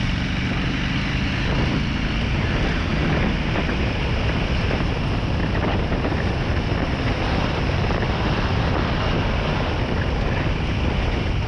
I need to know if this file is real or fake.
real